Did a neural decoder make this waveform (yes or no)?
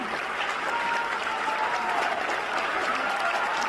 no